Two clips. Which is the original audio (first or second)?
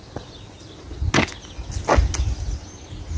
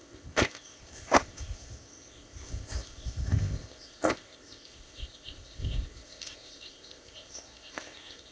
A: first